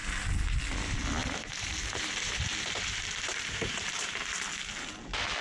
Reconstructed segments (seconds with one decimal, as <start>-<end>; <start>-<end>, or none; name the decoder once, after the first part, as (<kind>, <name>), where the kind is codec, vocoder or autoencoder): 1.2-4.4 (vocoder, BigVGAN v2)